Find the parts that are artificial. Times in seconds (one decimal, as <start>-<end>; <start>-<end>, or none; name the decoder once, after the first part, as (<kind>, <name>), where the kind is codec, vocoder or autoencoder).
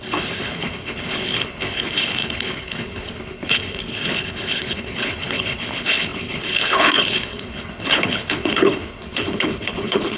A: 0.0-10.2 (codec, HILCodec)